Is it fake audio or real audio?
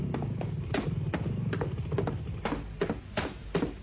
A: real